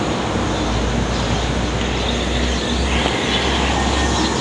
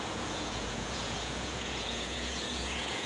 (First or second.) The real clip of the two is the first